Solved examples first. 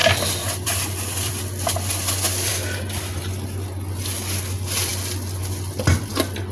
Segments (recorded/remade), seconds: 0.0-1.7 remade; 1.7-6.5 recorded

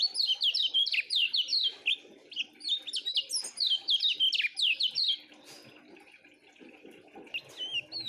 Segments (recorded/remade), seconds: 0.0-8.1 recorded

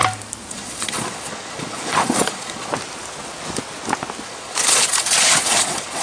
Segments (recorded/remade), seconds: 0.0-0.5 recorded; 0.5-2.7 remade; 2.7-4.3 recorded; 4.3-6.0 remade